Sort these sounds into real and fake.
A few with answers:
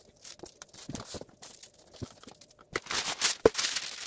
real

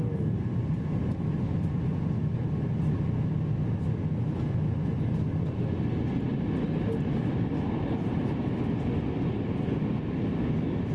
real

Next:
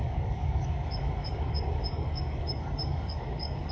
fake